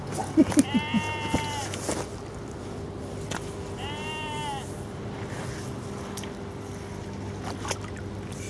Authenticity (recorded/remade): recorded